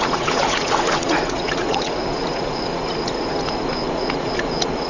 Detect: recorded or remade remade